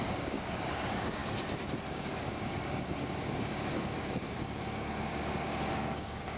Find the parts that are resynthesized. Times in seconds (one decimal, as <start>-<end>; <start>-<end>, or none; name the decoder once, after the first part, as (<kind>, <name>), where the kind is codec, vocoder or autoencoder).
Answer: 0.0-1.2 (codec, DAC); 1.9-6.4